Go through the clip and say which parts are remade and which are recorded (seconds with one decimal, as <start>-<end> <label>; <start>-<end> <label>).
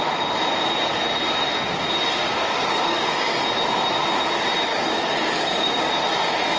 0.0-2.2 recorded; 2.2-3.4 remade; 3.4-4.7 recorded; 4.7-5.9 remade; 5.9-6.6 recorded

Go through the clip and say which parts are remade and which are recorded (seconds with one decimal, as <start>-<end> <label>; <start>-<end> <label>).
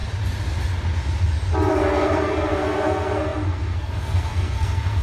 0.0-1.7 recorded; 1.7-5.0 remade